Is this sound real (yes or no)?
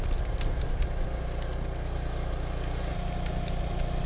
yes